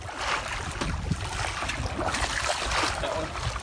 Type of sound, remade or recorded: recorded